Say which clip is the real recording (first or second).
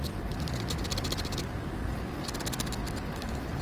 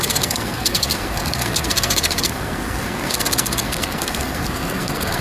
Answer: first